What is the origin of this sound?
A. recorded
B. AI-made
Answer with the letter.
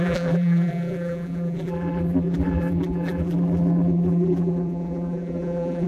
B